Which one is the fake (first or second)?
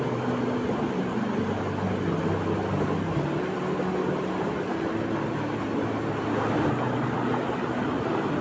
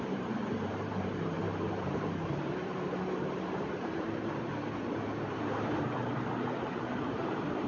second